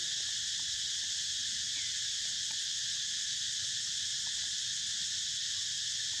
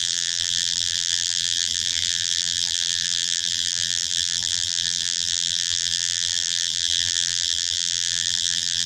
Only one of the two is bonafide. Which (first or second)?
first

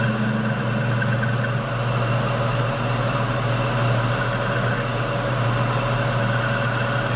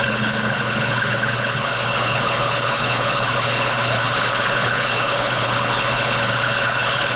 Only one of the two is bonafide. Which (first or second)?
first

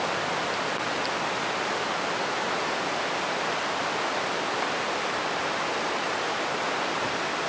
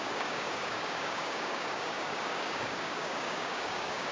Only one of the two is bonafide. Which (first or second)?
first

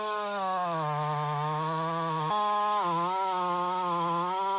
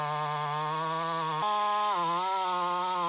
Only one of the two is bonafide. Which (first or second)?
second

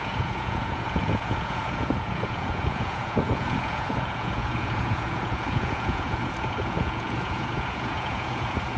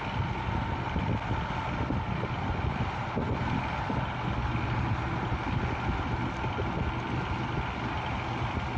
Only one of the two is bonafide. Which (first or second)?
second